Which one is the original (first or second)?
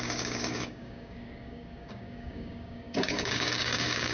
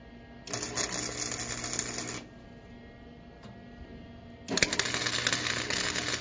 second